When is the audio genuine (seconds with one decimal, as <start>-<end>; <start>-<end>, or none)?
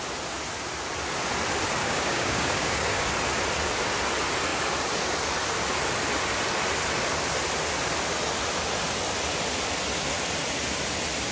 0.0-1.8; 3.1-11.3